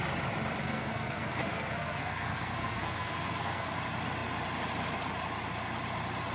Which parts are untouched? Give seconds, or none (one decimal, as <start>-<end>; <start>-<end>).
0.0-0.6; 3.7-6.3